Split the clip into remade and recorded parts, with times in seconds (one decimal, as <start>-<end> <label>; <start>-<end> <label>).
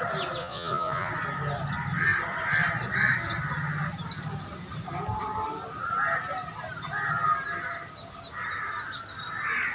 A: 0.0-0.4 recorded; 0.4-1.1 remade; 1.1-9.7 recorded